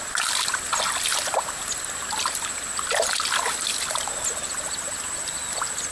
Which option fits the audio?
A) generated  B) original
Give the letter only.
B